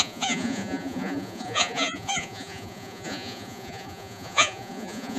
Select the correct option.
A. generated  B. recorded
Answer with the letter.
A